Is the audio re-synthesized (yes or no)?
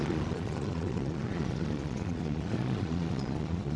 yes